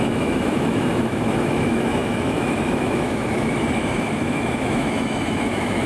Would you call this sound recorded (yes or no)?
no